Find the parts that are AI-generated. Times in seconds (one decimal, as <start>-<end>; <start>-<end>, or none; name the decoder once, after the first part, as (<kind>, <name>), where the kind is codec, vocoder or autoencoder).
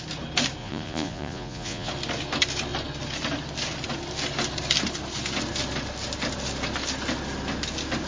0.6-1.9 (vocoder, Vocos)